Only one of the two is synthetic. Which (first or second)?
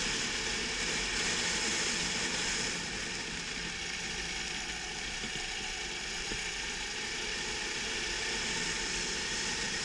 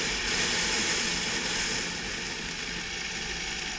first